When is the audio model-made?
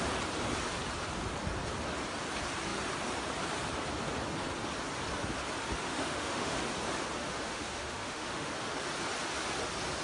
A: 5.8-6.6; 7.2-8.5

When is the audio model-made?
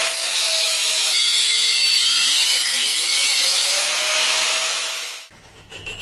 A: 0.0-6.0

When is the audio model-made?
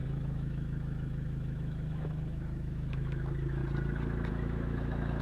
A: 0.0-3.6; 4.3-5.2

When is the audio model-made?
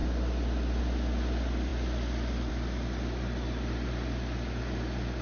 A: none